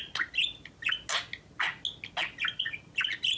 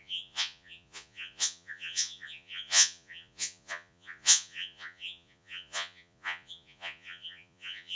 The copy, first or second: second